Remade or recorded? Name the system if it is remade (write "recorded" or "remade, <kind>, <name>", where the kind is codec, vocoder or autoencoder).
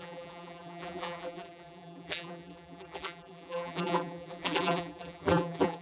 remade, vocoder, BigVGAN v2